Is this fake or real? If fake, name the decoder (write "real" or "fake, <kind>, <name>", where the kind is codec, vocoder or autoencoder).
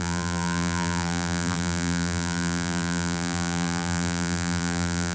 fake, vocoder, BigVGAN v2